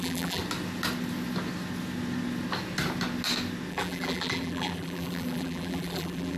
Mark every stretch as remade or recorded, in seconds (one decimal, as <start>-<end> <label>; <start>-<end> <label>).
0.0-0.4 remade; 0.4-3.7 recorded; 3.7-6.4 remade

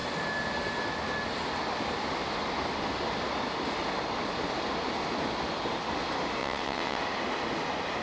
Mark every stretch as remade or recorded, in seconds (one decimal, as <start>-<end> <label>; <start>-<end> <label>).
0.0-6.4 recorded; 6.4-7.0 remade; 7.0-8.0 recorded

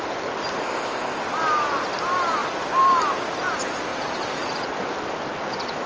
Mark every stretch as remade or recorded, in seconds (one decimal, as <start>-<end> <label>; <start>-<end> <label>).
0.0-0.6 recorded; 0.6-1.2 remade; 1.2-5.9 recorded